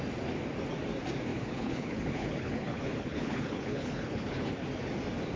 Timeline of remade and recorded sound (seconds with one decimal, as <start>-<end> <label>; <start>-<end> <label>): 0.0-1.3 recorded; 1.3-4.5 remade; 4.5-5.4 recorded